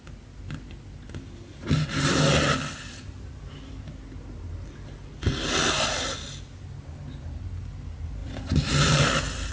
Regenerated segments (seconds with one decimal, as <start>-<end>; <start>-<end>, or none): none